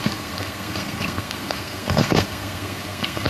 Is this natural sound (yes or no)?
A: no